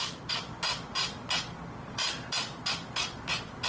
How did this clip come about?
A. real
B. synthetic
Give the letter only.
A